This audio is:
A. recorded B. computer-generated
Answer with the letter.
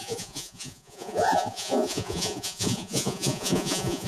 B